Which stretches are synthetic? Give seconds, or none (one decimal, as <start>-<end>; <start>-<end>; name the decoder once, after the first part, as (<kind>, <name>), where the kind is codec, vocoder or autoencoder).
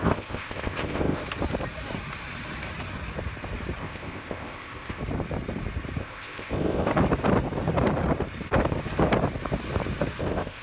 0.0-1.2 (codec, ZipCodec); 3.8-5.0; 6.0-6.9; 10.2-10.6